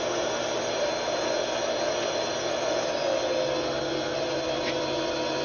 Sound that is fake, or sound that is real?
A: real